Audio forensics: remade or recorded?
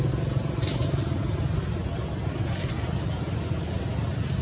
recorded